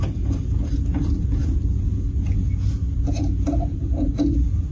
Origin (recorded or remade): recorded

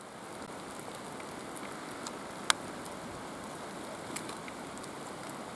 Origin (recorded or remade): recorded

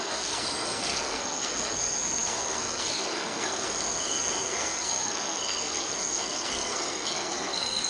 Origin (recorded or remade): remade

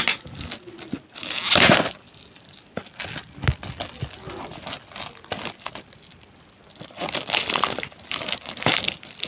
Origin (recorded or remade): recorded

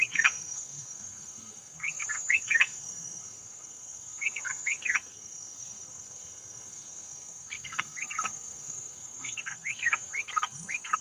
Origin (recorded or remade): remade